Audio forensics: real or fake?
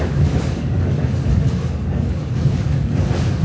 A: fake